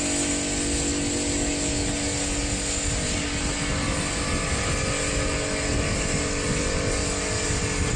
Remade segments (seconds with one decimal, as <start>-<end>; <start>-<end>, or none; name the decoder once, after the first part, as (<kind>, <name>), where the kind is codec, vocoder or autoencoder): none